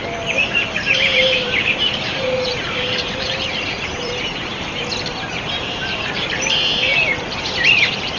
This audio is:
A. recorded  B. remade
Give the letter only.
B